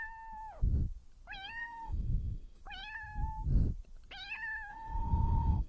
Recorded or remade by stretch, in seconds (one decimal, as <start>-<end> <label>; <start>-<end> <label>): 0.0-1.6 recorded; 1.6-2.6 remade; 2.6-4.7 recorded; 4.7-5.7 remade